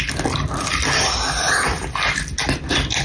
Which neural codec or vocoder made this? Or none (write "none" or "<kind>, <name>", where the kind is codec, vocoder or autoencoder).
none